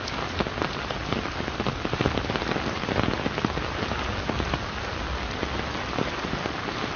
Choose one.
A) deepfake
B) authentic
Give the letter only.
B